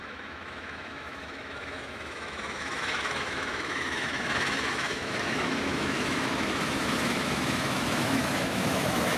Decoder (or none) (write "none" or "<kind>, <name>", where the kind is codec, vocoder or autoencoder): autoencoder, DAC-VAE